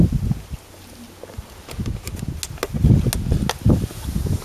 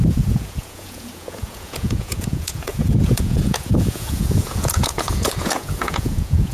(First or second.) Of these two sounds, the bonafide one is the first